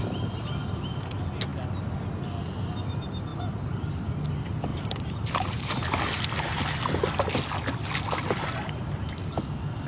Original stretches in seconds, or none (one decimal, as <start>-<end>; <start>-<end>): 0.0-3.3; 4.1-4.7; 5.7-9.9